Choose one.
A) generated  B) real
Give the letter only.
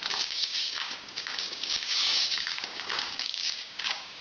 A